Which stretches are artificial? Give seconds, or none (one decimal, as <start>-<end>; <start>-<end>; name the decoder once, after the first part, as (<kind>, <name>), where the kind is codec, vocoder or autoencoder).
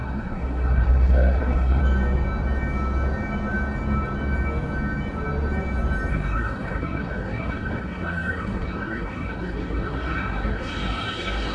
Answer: 0.0-1.8 (codec, SNAC); 6.1-11.5